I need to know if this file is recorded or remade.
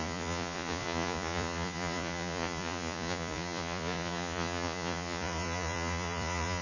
remade